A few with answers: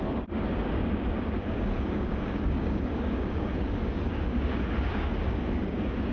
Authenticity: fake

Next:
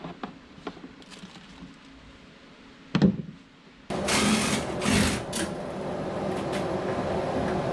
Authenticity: real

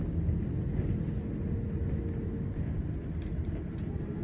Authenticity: real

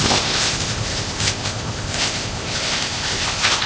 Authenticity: fake